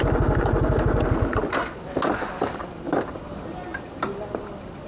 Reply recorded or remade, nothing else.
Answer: recorded